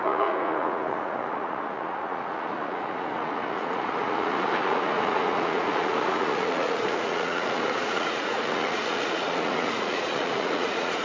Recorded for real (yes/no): no